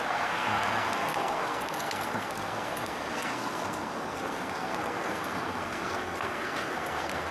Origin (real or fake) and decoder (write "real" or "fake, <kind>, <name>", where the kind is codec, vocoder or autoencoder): fake, codec, SNAC